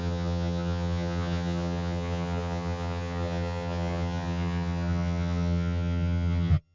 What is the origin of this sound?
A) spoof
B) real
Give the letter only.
A